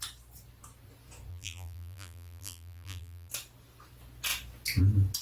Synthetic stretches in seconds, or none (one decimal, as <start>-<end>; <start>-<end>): 1.3-3.3